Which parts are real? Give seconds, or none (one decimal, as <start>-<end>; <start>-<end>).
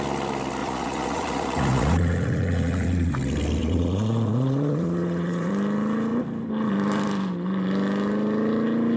0.0-0.6; 3.1-3.6; 5.5-9.0